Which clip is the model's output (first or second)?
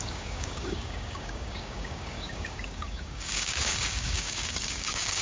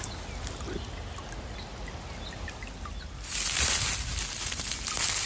first